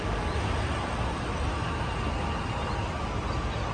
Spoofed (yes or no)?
no